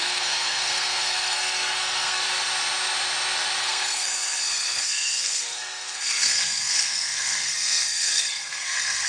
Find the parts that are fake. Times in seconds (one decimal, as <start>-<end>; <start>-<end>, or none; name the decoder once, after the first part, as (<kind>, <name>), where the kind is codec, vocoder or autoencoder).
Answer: 0.0-2.2 (codec, SNAC); 3.6-9.1